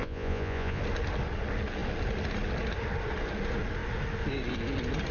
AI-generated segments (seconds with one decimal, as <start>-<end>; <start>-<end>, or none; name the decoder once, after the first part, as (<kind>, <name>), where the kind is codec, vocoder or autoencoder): 0.0-0.8 (vocoder, Vocos)